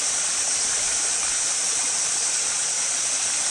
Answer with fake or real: real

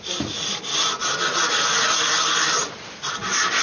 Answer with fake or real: real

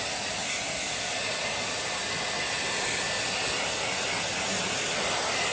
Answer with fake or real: real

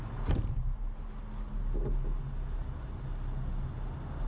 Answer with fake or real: real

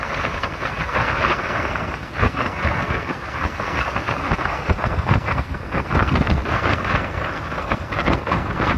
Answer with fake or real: fake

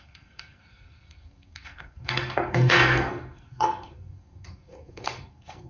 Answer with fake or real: fake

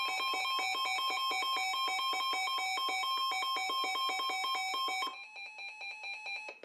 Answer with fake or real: real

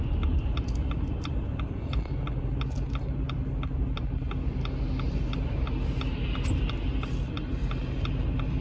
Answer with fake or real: real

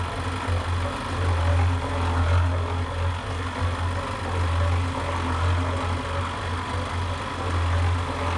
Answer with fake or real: real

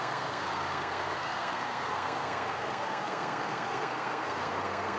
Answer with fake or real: fake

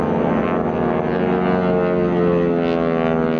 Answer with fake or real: real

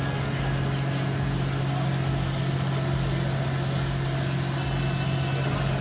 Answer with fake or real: real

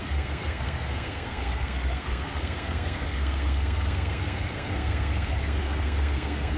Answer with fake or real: fake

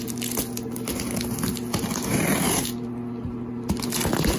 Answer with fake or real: real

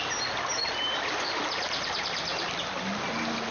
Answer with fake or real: real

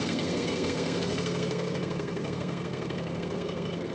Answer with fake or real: fake